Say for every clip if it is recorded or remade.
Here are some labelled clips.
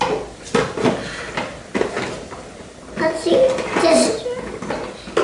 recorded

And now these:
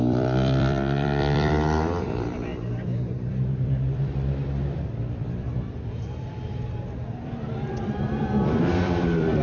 remade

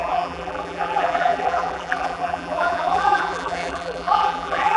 remade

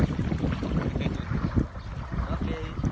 recorded